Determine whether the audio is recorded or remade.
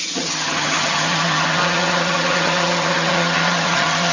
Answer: remade